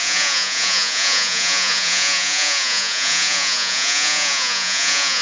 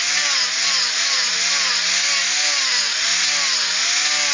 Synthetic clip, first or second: first